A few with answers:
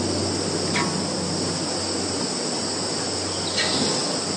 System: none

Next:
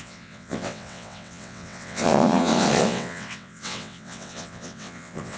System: vocoder, WaveNeXt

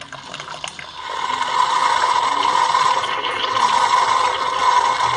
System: none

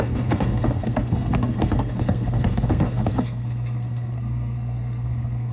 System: codec, SNAC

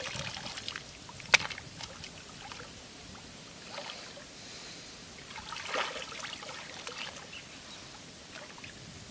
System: none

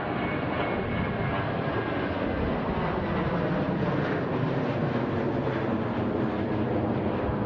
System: none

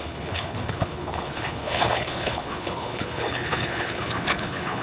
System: codec, HILCodec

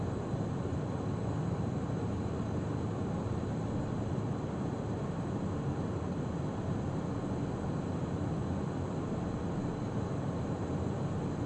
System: none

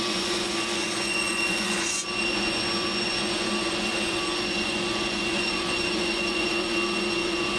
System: vocoder, Vocos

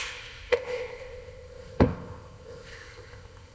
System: codec, ZipCodec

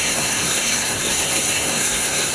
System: codec, SNAC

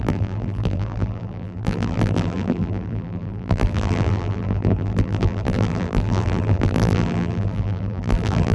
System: vocoder, BigVGAN v2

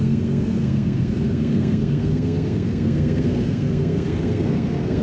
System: codec, SNAC